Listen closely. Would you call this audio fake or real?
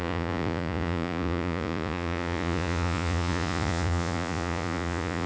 fake